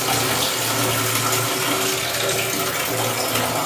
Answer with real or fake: real